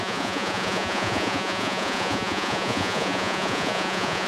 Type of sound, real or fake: fake